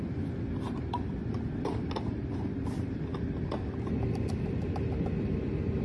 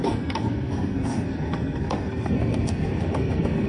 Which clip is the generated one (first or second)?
second